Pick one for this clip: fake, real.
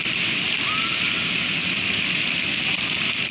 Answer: real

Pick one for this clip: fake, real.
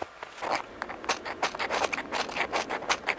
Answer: real